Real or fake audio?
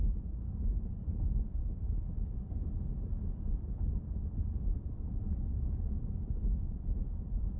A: fake